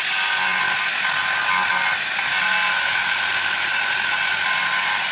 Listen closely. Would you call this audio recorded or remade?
recorded